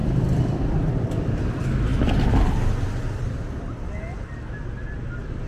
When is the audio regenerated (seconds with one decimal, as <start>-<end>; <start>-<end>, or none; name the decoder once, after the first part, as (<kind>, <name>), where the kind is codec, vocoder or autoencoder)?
0.0-1.4 (vocoder, BigVGAN v2)